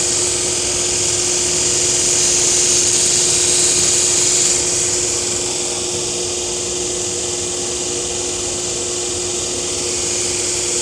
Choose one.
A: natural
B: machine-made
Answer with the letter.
A